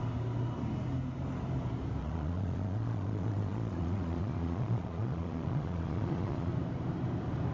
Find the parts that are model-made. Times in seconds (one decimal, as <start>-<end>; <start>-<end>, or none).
2.0-6.5